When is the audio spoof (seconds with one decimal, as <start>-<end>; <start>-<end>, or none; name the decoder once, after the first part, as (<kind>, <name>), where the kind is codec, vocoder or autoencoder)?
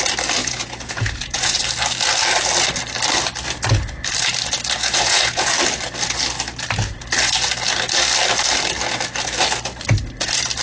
0.4-1.6 (vocoder, Vocos); 4.8-5.5